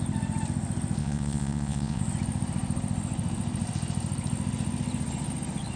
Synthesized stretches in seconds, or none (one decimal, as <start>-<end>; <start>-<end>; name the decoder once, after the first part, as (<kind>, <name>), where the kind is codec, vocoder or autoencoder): 1.0-2.0 (vocoder, Vocos)